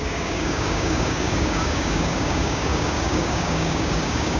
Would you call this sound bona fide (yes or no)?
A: no